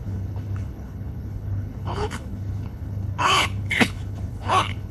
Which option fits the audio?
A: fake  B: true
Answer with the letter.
A